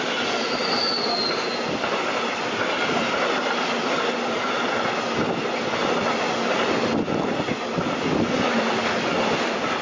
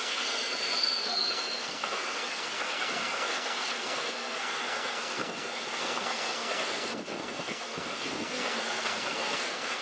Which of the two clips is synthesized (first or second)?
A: second